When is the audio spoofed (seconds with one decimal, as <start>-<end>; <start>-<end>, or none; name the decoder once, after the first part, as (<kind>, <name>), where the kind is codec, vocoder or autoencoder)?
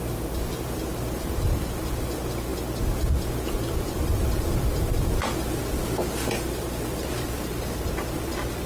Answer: 0.0-2.5 (vocoder, BigVGAN v2); 3.6-5.6; 6.3-8.7